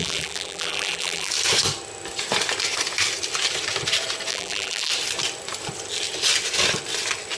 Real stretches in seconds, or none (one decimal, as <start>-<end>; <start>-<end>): 1.3-4.3; 4.9-7.4